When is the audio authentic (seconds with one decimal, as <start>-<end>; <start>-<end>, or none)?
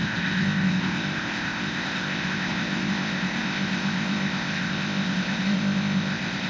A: none